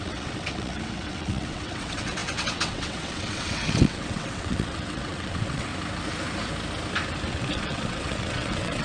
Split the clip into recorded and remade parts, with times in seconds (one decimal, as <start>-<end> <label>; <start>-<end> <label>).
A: 0.0-5.7 remade; 5.7-7.3 recorded; 7.3-8.8 remade